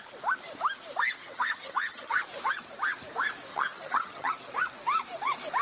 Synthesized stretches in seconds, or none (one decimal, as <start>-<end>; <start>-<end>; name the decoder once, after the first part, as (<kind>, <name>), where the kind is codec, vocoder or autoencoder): 1.2-2.2 (vocoder, HiFi-GAN); 3.5-4.3